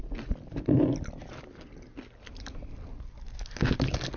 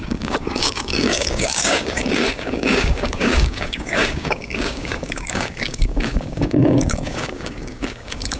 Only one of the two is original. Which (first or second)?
first